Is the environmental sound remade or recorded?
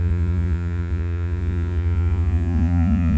remade